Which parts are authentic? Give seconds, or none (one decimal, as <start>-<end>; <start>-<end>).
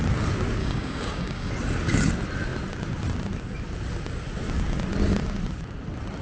0.0-0.6; 1.5-6.2